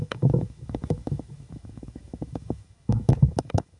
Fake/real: fake